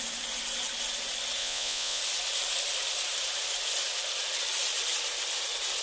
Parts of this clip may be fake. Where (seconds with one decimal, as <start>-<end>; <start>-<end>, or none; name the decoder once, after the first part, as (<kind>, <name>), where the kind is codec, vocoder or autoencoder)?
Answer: 1.4-2.0 (vocoder, Vocos)